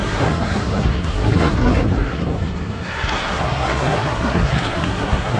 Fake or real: fake